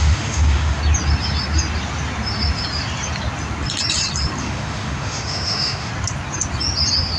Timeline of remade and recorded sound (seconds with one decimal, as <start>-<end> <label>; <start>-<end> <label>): 0.0-0.8 remade; 0.8-4.4 recorded; 4.4-5.9 remade; 5.9-7.2 recorded